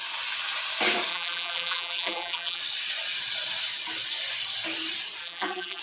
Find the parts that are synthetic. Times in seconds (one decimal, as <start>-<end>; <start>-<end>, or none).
1.1-2.6; 5.2-5.8